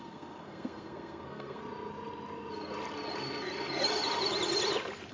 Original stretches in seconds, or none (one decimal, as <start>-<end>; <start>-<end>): 1.6-5.1